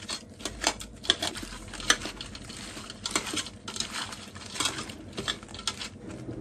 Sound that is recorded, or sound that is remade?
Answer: recorded